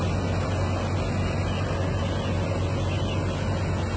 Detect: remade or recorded recorded